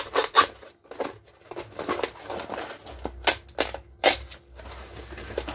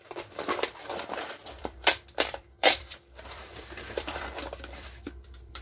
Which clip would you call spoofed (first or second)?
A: second